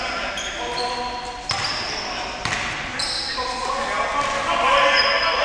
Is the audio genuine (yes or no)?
yes